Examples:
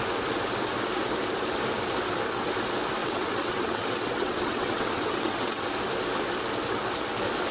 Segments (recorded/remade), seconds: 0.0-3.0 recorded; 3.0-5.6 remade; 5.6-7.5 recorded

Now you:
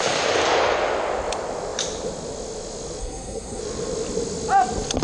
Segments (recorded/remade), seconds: 0.0-3.0 recorded; 3.0-3.6 remade; 3.6-5.0 recorded

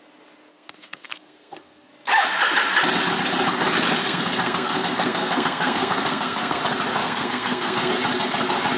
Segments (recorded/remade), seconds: 0.0-0.5 recorded; 0.5-1.9 remade; 1.9-4.0 recorded; 4.0-6.6 remade; 6.6-7.0 recorded; 7.0-7.9 remade; 7.9-8.8 recorded